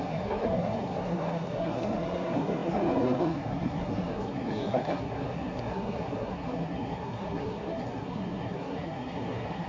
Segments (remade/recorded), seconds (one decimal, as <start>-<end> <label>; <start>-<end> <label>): 0.0-9.7 remade